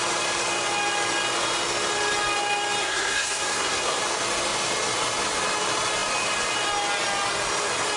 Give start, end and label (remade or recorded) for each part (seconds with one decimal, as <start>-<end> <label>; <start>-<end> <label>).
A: 0.0-2.8 recorded; 2.8-4.0 remade; 4.0-8.0 recorded